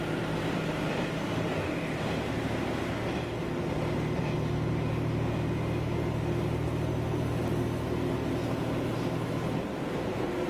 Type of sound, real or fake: real